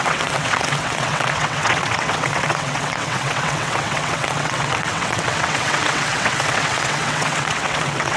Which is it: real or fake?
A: fake